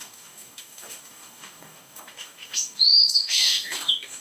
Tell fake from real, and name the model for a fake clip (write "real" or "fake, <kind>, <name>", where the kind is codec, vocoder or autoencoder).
fake, codec, DAC